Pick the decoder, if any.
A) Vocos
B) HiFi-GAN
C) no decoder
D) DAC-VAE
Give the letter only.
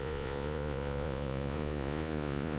A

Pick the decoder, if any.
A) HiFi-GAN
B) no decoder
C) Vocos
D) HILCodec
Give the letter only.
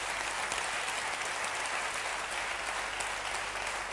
B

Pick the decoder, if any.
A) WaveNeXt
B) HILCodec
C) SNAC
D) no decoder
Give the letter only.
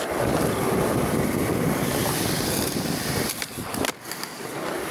D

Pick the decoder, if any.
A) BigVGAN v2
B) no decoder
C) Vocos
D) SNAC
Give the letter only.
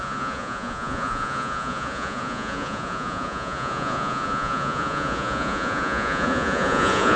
C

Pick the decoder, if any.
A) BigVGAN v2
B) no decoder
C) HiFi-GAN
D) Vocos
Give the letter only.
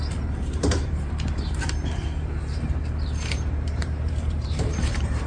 A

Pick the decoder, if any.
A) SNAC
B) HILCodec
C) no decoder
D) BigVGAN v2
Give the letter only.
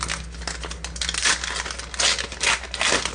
C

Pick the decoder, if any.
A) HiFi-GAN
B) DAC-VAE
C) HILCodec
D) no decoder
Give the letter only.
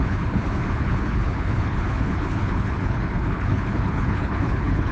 C